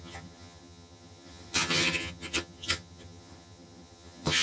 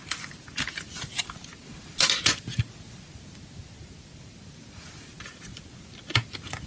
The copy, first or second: first